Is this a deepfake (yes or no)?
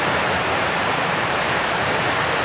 yes